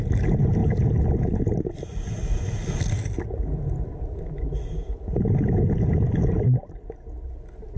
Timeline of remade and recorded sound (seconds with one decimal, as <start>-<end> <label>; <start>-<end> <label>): 0.0-7.8 recorded